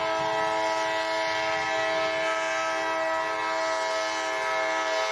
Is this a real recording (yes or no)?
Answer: yes